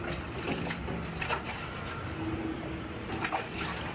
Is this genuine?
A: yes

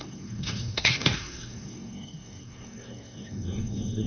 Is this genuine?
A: no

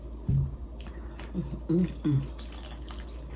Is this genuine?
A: yes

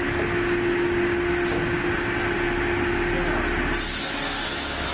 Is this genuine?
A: yes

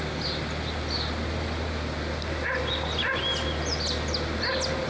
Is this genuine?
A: yes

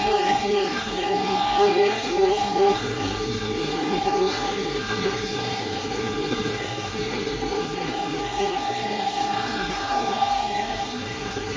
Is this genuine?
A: no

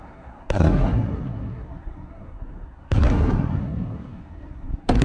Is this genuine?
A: no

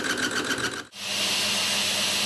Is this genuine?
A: yes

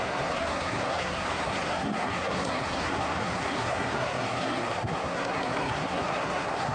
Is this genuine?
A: no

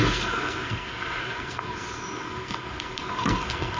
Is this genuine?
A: no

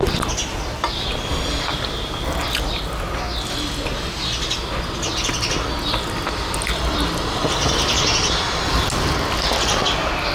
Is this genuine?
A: yes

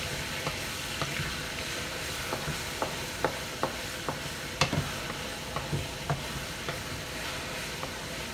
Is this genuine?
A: yes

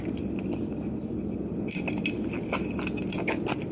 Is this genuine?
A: yes